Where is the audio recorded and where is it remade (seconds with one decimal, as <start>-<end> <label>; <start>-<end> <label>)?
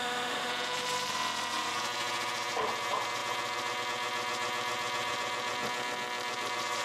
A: 0.0-0.5 remade; 0.5-6.8 recorded